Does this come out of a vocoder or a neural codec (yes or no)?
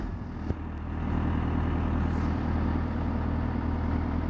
yes